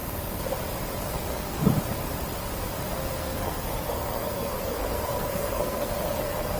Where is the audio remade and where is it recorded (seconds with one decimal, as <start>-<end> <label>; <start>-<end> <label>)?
0.0-1.0 recorded; 1.0-1.6 remade; 1.6-2.9 recorded; 2.9-6.6 remade